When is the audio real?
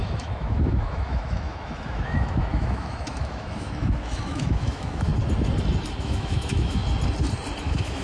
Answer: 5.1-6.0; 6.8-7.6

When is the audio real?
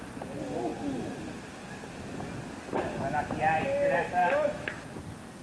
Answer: 0.0-4.2; 4.7-5.4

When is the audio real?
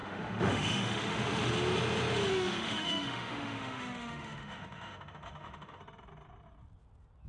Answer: 1.5-2.3; 5.8-7.3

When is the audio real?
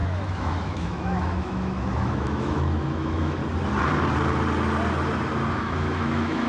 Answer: 3.4-5.5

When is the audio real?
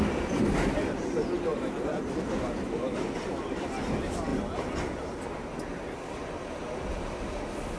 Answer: 0.0-7.8